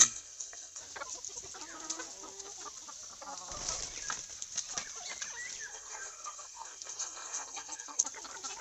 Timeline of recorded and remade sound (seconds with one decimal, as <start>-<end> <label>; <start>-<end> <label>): 0.0-0.8 remade; 0.8-5.7 recorded; 5.7-8.0 remade; 8.0-8.6 recorded